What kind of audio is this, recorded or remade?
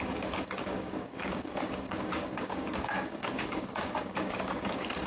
remade